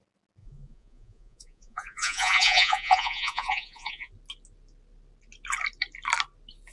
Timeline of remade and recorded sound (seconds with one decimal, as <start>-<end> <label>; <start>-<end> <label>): 0.0-0.4 recorded; 0.4-4.1 remade; 4.1-6.7 recorded